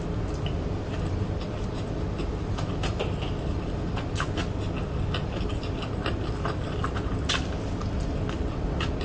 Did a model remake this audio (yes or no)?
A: no